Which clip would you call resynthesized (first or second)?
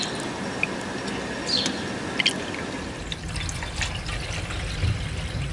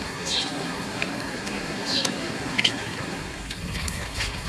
second